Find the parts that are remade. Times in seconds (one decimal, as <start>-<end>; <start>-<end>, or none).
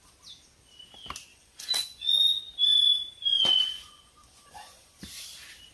1.3-2.4; 3.3-5.0